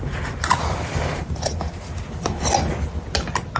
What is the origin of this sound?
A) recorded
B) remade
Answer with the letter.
A